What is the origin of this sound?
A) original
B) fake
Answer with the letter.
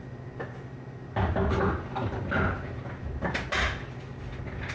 A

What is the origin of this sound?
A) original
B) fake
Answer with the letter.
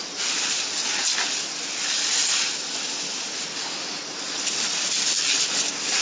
A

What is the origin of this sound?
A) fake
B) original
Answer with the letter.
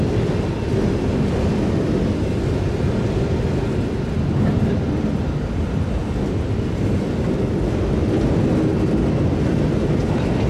B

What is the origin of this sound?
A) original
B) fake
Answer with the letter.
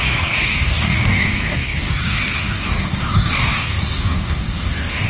B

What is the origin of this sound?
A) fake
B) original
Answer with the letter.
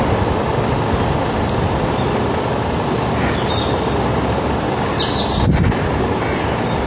B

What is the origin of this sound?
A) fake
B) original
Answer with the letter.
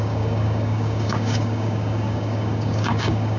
A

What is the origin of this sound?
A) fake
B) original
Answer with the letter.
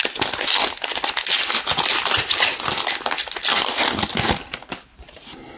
B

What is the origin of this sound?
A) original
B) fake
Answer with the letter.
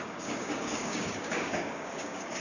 B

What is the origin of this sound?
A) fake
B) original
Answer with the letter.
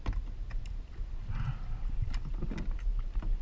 B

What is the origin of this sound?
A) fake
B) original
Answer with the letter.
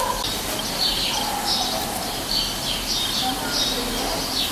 B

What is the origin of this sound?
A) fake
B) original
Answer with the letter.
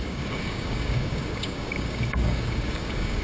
A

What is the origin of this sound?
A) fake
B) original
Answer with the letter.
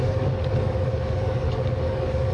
A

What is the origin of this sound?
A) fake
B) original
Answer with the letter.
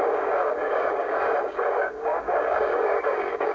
A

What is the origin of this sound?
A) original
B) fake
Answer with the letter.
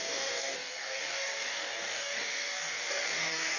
B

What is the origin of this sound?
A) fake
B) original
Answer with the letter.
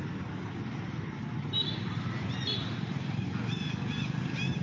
B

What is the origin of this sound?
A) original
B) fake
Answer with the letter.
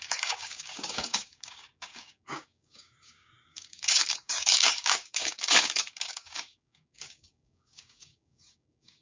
B